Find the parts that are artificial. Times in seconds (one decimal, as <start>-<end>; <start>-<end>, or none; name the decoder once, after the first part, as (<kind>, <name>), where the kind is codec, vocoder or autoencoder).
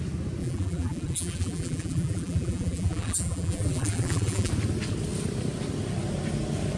0.4-4.5 (vocoder, BigVGAN v2)